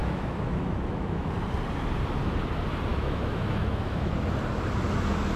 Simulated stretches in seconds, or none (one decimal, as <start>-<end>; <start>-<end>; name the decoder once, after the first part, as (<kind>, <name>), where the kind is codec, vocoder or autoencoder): 0.0-1.3 (autoencoder, DAC-VAE); 2.9-4.1